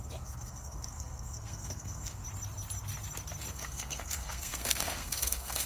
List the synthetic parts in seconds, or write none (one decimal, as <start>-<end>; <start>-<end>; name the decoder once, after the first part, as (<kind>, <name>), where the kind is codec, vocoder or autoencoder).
0.0-2.2 (codec, SNAC); 3.5-5.7